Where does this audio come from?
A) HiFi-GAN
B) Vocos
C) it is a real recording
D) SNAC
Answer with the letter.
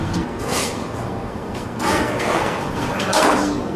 D